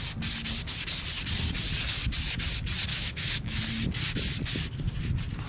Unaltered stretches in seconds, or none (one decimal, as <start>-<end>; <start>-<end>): 0.0-2.9; 3.6-5.5